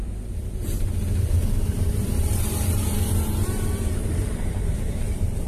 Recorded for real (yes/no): no